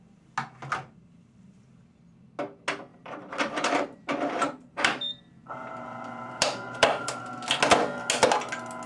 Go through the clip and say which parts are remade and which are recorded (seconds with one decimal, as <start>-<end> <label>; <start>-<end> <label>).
0.0-2.9 recorded; 2.9-7.3 remade; 7.3-8.9 recorded